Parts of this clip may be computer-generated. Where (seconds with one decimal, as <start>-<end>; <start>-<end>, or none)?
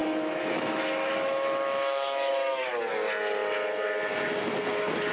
0.0-2.7